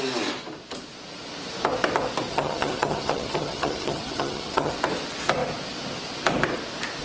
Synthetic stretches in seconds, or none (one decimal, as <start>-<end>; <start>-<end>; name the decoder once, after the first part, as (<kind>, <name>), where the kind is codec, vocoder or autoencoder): 2.3-4.7 (vocoder, HiFi-GAN)

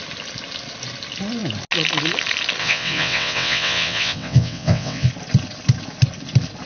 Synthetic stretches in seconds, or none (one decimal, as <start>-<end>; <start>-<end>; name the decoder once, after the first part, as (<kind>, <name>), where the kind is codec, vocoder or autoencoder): 2.6-5.1 (vocoder, WaveNeXt)

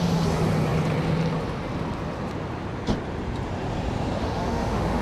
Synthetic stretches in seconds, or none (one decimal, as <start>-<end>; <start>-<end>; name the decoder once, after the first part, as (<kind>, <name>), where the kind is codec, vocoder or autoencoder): 4.2-5.0 (autoencoder, DAC-VAE)

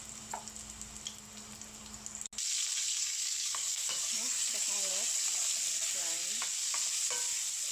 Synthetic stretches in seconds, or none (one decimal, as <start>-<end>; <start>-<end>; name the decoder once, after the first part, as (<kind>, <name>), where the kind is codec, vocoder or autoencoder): 2.9-4.9 (codec, DAC)

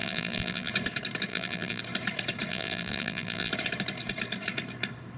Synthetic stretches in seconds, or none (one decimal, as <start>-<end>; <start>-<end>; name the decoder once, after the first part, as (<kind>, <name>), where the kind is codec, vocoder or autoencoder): 0.0-0.7 (vocoder, BigVGAN v2); 1.3-1.8; 2.5-3.5

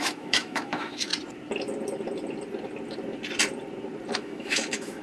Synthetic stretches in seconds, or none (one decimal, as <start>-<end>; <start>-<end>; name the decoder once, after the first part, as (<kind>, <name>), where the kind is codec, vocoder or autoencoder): 0.0-1.1 (autoencoder, DAC-VAE); 4.1-5.0

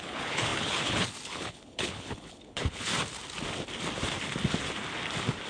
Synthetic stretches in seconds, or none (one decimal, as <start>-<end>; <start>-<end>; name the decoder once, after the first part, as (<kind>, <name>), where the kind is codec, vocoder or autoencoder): 0.0-2.9 (codec, HILCodec)